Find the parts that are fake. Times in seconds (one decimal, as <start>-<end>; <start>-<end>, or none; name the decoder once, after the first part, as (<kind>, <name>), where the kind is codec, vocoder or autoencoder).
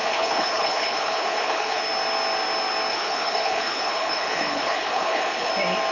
0.0-1.8 (codec, HILCodec); 2.9-5.5